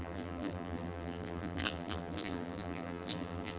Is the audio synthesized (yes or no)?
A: yes